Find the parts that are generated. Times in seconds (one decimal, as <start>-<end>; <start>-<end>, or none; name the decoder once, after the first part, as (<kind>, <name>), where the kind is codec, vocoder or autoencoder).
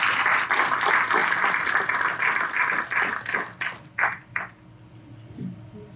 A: none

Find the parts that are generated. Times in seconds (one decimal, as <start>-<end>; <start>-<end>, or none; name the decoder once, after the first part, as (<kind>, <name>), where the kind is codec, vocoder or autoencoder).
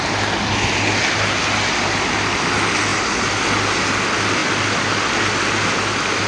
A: none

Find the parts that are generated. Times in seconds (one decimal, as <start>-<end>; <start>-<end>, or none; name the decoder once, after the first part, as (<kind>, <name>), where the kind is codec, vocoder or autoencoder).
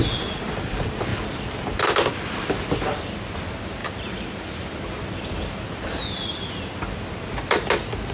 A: none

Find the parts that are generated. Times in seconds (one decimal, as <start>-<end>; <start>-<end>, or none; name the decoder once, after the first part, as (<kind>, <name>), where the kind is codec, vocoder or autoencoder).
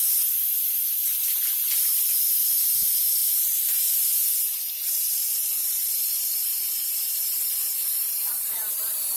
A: none